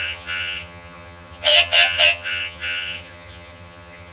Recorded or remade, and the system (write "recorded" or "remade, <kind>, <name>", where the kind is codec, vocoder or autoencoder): remade, vocoder, HiFi-GAN